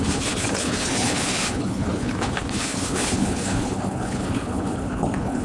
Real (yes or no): no